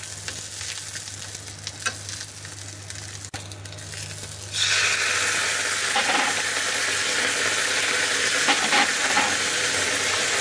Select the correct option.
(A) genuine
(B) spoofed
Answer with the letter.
A